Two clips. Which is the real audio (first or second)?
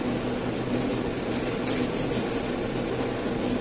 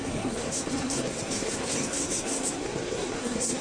first